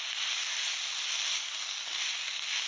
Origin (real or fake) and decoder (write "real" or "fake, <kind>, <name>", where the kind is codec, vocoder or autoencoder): real